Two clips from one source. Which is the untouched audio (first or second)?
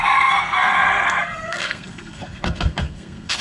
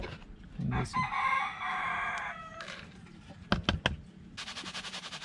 second